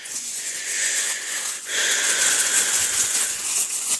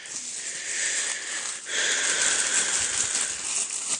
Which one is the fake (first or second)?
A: first